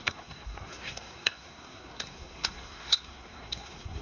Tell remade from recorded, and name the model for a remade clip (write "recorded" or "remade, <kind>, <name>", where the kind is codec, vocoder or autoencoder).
remade, codec, SNAC